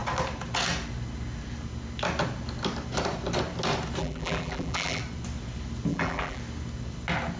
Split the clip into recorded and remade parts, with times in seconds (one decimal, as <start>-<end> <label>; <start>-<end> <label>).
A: 0.0-4.0 recorded; 4.0-5.0 remade; 5.0-5.9 recorded; 5.9-6.4 remade; 6.4-7.4 recorded